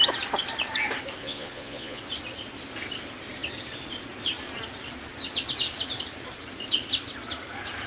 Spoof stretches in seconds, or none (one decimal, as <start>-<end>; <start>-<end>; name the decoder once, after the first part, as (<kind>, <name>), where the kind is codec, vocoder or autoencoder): 1.2-2.0 (vocoder, Vocos)

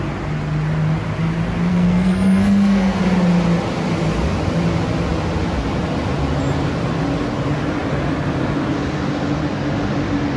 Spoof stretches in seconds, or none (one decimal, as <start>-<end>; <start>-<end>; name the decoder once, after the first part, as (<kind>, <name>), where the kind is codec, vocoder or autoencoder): 1.7-3.0 (codec, SNAC)

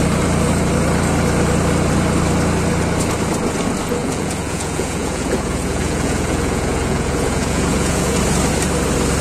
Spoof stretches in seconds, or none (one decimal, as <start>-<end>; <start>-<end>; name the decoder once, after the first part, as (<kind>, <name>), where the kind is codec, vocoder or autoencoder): 4.0-8.2 (vocoder, Vocos)

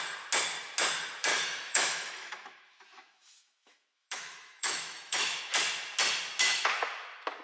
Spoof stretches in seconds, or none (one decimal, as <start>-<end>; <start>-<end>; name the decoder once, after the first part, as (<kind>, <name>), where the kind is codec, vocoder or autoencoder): 1.3-5.4 (autoencoder, DAC-VAE)

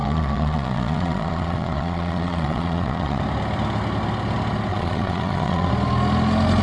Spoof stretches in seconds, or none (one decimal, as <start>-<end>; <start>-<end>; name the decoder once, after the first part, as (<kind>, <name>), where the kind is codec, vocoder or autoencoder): 0.0-3.2 (vocoder, Vocos); 4.7-5.7

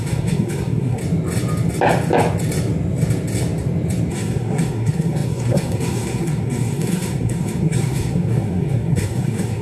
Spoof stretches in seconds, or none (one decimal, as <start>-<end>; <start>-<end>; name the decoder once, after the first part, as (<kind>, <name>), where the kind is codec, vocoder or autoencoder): 0.0-1.0 (codec, SNAC); 4.1-9.6

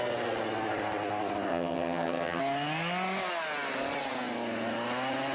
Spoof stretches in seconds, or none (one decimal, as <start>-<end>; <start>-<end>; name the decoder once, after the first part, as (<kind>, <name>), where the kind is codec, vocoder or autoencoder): 1.5-2.4 (vocoder, HiFi-GAN)

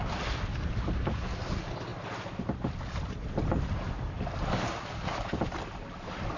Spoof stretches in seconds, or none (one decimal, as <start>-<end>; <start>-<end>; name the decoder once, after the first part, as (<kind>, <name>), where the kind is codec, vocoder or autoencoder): none